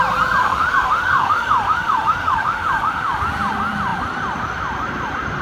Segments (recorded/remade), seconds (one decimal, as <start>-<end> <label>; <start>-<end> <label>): 0.0-0.4 recorded; 0.4-3.2 remade; 3.2-5.4 recorded